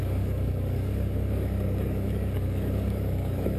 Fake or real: fake